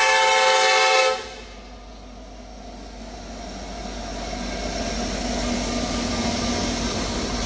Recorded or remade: recorded